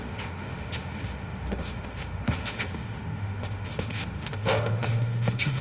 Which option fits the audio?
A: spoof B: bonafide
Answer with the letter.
A